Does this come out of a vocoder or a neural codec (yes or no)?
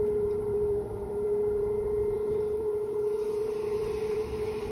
yes